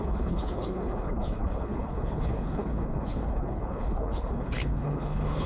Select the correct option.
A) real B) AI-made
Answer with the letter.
B